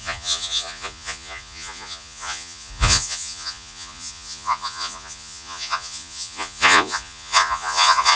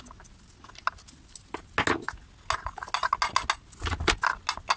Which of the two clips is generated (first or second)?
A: first